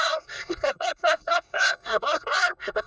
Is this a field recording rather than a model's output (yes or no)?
no